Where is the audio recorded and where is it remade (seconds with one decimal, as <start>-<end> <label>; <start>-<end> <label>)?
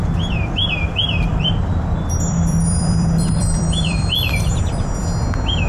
0.0-1.3 recorded; 1.3-4.6 remade; 4.6-5.7 recorded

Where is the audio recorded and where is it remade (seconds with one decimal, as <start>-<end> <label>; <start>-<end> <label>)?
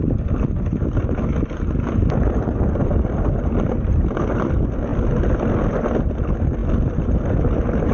0.0-7.9 recorded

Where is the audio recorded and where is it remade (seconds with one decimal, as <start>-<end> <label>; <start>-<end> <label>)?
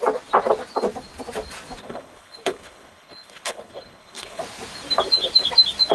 0.0-1.8 recorded; 1.8-4.4 remade; 4.4-5.9 recorded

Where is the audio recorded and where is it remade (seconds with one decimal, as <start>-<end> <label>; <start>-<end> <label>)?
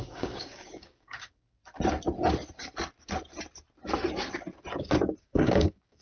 0.0-1.6 remade; 1.6-5.2 recorded; 5.2-6.0 remade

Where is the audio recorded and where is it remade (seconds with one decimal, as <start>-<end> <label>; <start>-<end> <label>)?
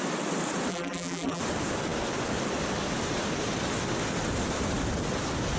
0.0-0.7 recorded; 0.7-1.4 remade; 1.4-5.6 recorded